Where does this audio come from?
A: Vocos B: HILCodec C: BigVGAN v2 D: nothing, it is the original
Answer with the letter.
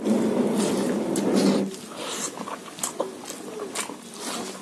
D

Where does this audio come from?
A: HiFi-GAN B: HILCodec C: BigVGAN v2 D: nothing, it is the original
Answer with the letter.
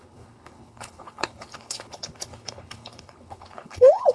B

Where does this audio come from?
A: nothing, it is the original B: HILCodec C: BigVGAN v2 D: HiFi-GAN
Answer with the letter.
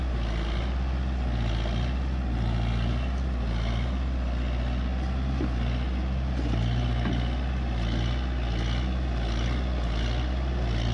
A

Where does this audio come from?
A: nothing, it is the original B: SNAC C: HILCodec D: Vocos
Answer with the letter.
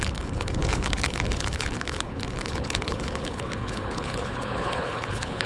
C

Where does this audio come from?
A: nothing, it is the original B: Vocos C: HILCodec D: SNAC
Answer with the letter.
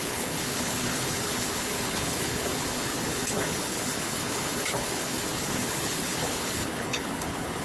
C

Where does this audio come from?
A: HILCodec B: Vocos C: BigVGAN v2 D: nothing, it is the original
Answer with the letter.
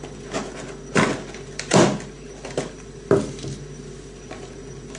D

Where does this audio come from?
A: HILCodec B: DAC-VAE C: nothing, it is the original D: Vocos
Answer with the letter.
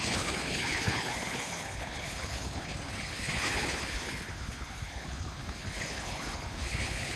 A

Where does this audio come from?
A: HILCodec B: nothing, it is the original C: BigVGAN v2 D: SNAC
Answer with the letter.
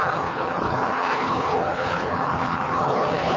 A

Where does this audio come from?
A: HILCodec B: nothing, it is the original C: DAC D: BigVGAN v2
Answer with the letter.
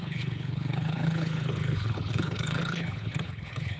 A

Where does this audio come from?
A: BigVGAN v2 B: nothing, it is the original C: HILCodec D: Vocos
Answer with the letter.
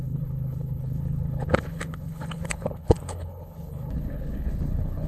C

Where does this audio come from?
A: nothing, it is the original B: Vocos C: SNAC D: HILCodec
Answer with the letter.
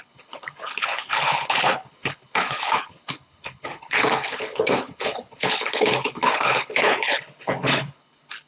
D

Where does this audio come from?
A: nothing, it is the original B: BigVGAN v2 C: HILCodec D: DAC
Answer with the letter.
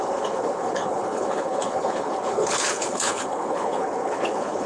C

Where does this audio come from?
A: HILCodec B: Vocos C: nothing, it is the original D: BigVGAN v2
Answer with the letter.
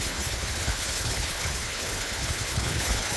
A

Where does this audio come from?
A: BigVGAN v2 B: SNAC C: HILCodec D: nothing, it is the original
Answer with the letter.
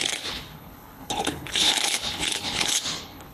C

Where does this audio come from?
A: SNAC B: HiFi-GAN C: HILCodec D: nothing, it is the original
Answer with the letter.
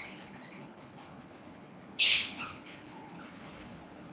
C